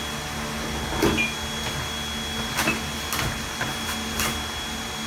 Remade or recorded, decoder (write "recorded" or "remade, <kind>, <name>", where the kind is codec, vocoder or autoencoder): recorded